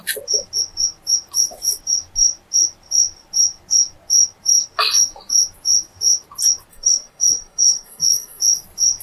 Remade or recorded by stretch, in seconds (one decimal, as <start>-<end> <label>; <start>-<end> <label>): 0.0-6.7 recorded; 6.7-8.4 remade; 8.4-9.0 recorded